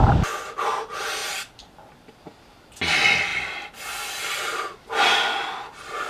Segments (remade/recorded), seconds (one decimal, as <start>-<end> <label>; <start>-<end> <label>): 0.0-6.1 recorded